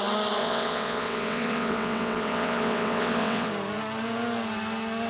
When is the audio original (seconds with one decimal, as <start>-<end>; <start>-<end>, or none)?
0.0-0.4; 3.5-5.1